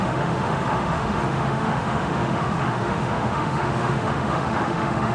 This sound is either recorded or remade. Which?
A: remade